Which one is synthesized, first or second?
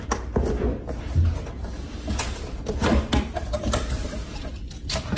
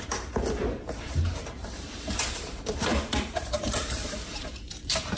second